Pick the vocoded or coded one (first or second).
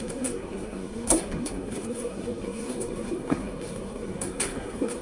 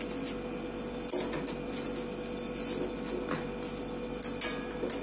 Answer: first